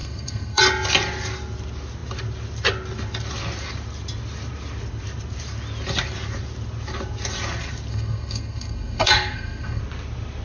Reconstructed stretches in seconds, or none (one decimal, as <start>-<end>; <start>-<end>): 0.0-0.6; 7.9-9.8

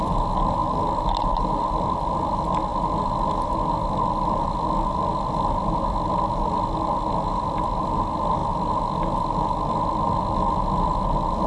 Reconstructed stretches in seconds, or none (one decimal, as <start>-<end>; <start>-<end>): none

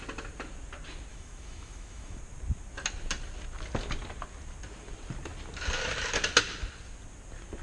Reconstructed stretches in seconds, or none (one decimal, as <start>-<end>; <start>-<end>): 1.1-2.2

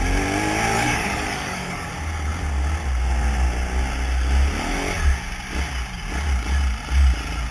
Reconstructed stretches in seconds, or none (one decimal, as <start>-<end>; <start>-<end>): 0.7-1.9

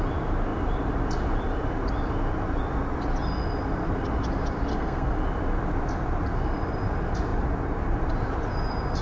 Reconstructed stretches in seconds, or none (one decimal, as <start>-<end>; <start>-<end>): 4.7-5.2